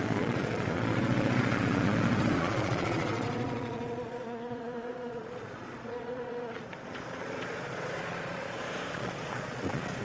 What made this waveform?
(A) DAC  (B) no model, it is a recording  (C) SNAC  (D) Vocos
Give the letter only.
D